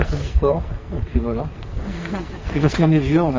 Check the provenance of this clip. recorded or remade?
remade